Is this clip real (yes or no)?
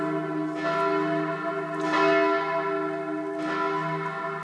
yes